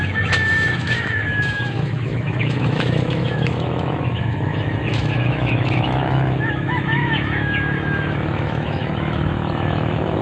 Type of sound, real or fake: fake